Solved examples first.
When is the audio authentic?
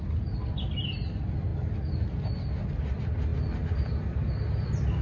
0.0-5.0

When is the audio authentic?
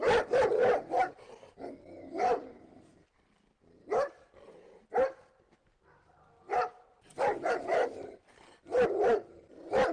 0.0-9.9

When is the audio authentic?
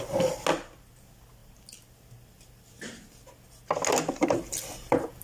0.0-5.2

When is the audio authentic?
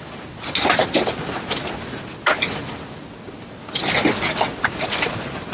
0.0-4.5